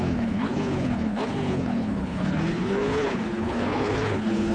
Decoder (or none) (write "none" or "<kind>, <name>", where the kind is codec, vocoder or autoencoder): codec, HILCodec